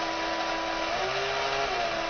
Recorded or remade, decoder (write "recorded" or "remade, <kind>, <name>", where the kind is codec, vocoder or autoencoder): recorded